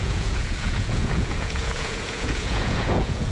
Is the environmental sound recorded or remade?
remade